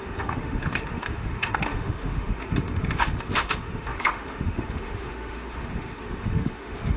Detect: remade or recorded remade